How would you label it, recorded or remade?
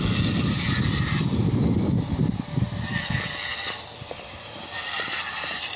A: remade